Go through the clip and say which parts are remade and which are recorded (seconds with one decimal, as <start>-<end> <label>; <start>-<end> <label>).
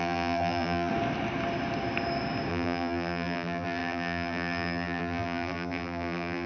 0.0-0.9 remade; 0.9-2.5 recorded; 2.5-6.5 remade